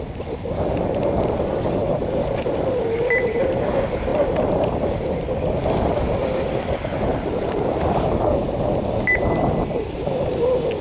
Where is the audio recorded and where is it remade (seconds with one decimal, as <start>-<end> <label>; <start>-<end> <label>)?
0.0-4.1 recorded; 4.1-4.7 remade; 4.7-7.1 recorded; 7.1-7.6 remade; 7.6-10.8 recorded